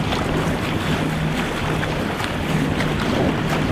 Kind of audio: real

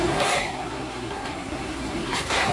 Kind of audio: fake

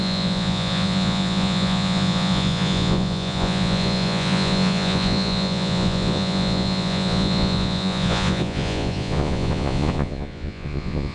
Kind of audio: fake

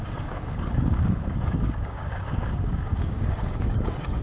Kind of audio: fake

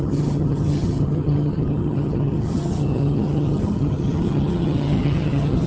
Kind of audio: fake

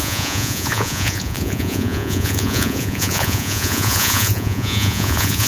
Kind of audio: fake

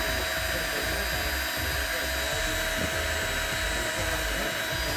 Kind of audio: real